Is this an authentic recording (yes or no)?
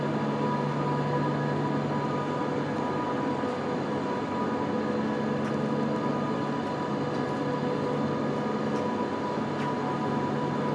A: yes